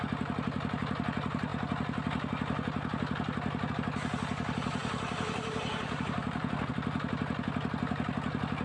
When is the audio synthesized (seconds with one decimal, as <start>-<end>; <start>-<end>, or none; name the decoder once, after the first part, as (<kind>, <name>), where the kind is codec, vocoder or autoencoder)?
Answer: 4.8-6.7 (vocoder, BigVGAN v2)